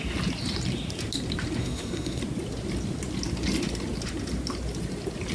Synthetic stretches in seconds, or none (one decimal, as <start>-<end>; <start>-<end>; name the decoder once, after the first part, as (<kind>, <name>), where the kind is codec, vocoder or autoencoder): 1.6-2.2 (codec, SNAC)